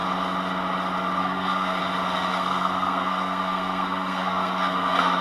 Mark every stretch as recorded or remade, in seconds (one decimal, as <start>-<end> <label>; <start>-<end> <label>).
0.0-1.2 recorded; 1.2-1.8 remade; 1.8-2.3 recorded; 2.3-5.2 remade